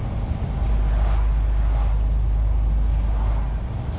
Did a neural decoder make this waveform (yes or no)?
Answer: no